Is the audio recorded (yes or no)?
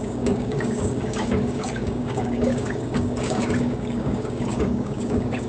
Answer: no